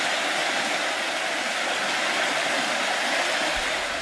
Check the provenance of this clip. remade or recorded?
recorded